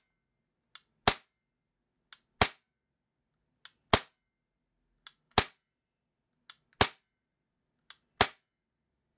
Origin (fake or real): real